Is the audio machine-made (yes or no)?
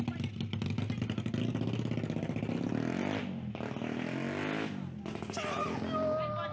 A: no